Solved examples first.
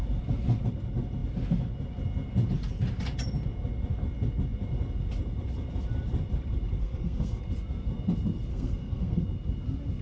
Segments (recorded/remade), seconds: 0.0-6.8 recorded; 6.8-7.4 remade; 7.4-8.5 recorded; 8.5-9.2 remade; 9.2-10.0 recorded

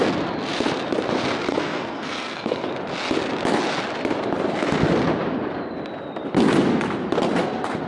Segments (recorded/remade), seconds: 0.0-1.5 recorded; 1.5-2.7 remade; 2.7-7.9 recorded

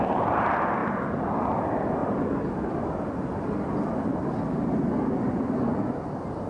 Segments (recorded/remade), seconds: 0.0-0.8 recorded; 0.8-1.3 remade; 1.3-2.0 recorded; 2.0-5.9 remade; 5.9-6.5 recorded